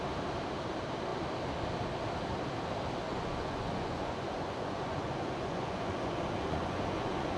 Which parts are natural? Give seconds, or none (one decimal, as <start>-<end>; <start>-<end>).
0.0-3.1